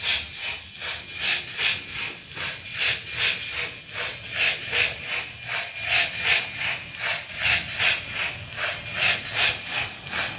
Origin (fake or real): real